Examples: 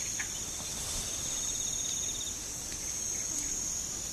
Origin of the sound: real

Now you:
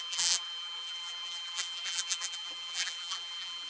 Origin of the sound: fake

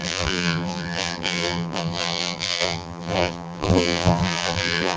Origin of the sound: fake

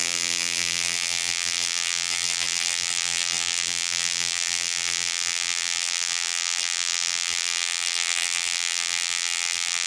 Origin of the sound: fake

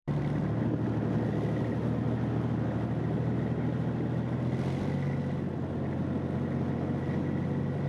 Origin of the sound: real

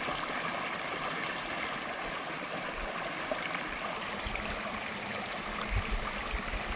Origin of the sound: real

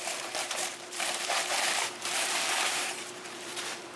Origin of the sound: fake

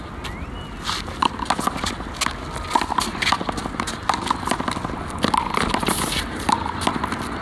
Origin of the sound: real